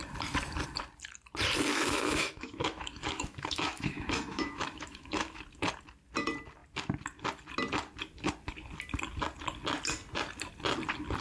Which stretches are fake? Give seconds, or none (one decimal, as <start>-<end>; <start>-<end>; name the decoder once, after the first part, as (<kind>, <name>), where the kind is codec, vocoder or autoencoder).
1.7-5.4 (autoencoder, DAC-VAE)

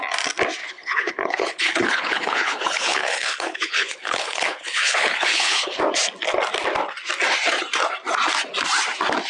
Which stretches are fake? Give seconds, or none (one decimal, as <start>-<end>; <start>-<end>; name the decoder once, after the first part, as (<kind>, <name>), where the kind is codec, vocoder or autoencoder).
0.6-5.8 (codec, HILCodec)

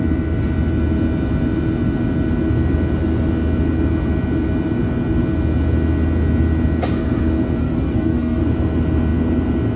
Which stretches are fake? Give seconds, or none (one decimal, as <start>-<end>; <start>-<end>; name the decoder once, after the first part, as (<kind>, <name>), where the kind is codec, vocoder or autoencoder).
7.6-8.4 (codec, SNAC)

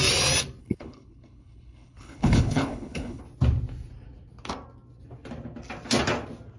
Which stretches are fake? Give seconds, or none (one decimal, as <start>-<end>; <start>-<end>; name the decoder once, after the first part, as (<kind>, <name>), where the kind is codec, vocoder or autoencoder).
0.6-3.2 (codec, HILCodec)

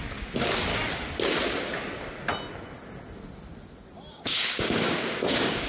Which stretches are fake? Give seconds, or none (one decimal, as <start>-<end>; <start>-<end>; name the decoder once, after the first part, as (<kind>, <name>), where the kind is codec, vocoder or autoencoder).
0.0-0.7 (codec, DAC); 4.1-5.7

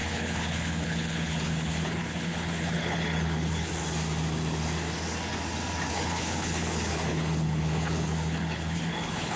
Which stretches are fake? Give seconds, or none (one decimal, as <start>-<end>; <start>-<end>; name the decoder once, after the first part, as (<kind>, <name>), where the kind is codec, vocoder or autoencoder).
0.0-3.7 (codec, HILCodec); 5.9-9.4

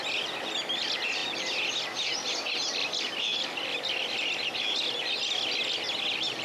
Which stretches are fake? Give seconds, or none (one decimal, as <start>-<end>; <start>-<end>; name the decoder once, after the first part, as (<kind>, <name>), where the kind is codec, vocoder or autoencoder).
none

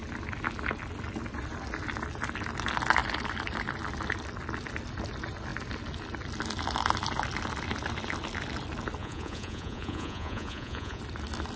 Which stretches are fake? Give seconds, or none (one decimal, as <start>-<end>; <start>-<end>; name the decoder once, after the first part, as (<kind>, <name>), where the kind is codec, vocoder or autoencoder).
9.0-11.0 (vocoder, Vocos)